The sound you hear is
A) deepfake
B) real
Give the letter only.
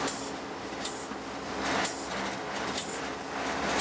B